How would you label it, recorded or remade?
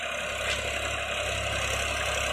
recorded